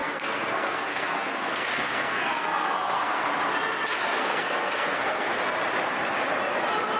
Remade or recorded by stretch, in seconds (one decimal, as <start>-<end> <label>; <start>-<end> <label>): 0.0-3.3 remade; 3.3-4.2 recorded; 4.2-5.4 remade; 5.4-7.0 recorded